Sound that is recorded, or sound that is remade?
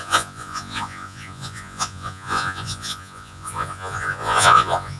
remade